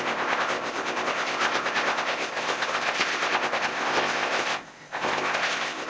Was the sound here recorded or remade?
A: remade